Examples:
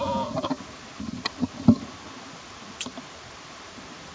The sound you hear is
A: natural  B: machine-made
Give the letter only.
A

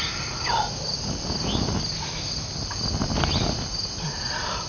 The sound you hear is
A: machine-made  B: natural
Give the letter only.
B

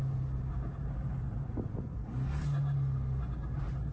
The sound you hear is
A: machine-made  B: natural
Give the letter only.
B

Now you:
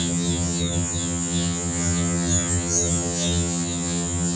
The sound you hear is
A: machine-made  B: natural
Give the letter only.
A